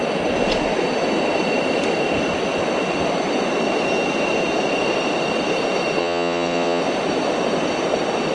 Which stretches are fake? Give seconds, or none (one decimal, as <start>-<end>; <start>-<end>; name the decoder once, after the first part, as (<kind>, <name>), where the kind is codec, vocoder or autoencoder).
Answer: 6.0-6.8 (vocoder, WaveNeXt)